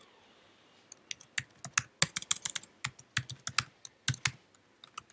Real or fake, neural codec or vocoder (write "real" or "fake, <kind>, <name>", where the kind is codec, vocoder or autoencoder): real